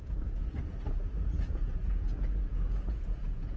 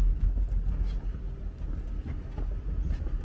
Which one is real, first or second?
second